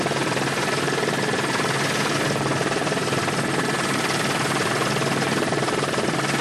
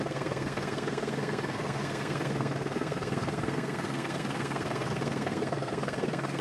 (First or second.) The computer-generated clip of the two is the second